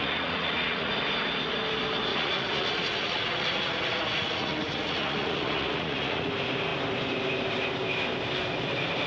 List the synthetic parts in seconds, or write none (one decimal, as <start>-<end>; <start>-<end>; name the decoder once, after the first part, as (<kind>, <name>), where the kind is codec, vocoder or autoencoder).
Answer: 0.0-0.9 (vocoder, Vocos); 2.1-6.3